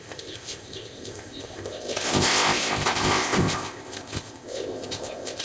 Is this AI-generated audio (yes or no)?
yes